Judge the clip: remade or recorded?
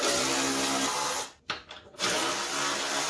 recorded